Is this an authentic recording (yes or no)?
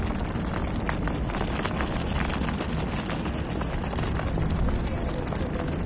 yes